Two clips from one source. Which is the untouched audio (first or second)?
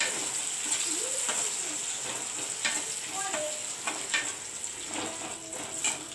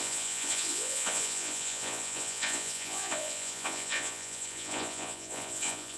first